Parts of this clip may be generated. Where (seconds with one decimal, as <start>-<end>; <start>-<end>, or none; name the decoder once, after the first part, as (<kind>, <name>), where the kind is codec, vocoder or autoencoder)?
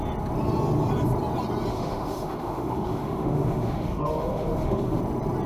1.7-5.0 (autoencoder, DAC-VAE)